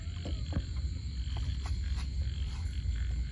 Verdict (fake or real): real